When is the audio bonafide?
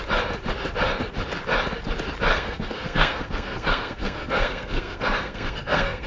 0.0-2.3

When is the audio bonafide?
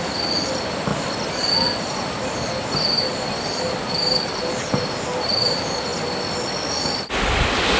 0.0-7.8